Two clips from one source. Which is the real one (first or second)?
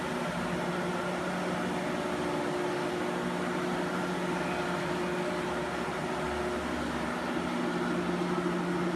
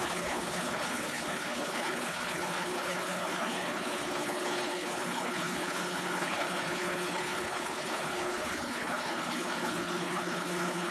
first